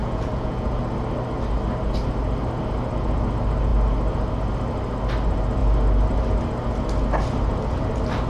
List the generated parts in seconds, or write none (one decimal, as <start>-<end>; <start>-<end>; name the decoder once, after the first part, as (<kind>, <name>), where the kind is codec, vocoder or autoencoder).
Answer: 0.0-0.8 (vocoder, Vocos)